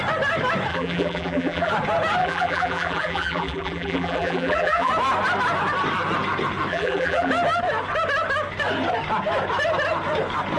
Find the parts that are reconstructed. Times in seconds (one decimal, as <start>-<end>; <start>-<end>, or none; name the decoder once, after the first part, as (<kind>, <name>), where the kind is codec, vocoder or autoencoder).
0.7-1.7 (vocoder, BigVGAN v2); 2.2-4.9; 6.7-7.3